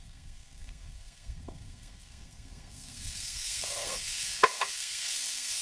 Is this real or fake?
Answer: fake